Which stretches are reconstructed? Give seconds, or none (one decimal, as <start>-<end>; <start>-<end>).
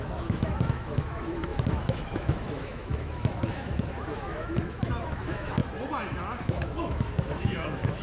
0.0-5.6; 6.4-8.0